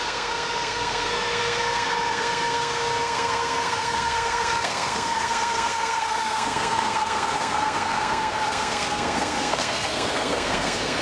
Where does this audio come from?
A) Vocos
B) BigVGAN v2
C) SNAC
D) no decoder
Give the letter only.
C